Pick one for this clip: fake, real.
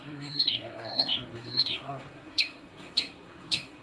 fake